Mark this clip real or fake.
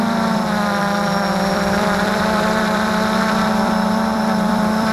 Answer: fake